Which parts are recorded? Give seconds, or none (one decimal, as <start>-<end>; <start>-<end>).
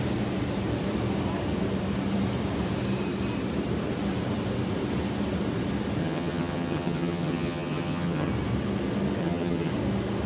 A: 0.0-6.0; 8.3-9.2; 9.7-10.3